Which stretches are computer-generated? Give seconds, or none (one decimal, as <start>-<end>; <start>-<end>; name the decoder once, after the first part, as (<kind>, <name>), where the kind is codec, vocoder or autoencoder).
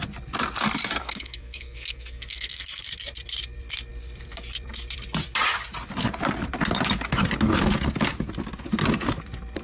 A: 1.0-2.8 (codec, SNAC)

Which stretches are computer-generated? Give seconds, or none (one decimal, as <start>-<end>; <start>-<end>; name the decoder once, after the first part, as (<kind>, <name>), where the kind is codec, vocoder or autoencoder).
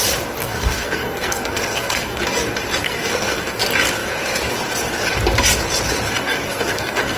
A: 0.4-2.2 (codec, SNAC); 2.8-3.6; 6.5-7.2